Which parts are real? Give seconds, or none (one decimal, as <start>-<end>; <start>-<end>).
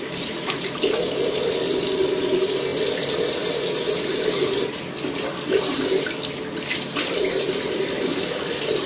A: 0.0-8.9